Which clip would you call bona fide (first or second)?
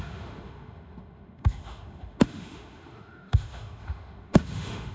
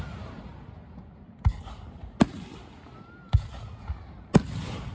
second